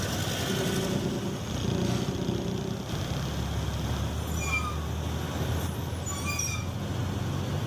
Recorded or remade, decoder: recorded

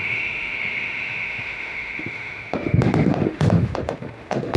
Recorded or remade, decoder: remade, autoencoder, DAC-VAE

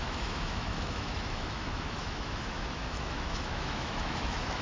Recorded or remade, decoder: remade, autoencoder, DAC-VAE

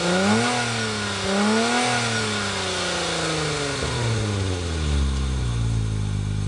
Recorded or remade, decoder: recorded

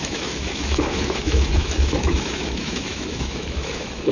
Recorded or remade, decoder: remade, autoencoder, DAC-VAE